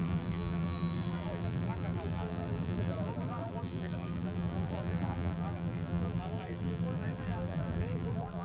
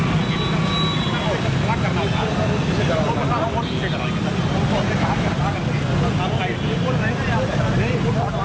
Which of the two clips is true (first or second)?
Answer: second